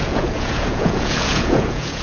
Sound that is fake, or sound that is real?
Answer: fake